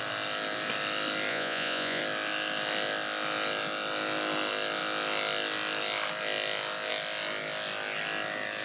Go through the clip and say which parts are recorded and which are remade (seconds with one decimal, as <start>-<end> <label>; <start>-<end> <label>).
0.0-1.3 recorded; 1.3-2.0 remade; 2.0-8.6 recorded